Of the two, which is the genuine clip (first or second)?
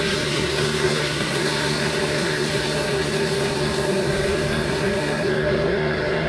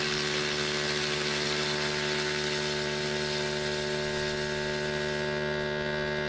second